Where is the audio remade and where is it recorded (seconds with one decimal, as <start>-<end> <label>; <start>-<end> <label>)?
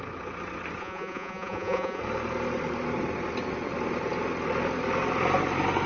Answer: 0.0-0.8 recorded; 0.8-2.0 remade; 2.0-5.9 recorded